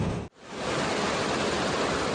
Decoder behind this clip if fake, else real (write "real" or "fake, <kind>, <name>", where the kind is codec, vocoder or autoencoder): real